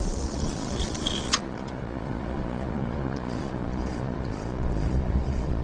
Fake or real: fake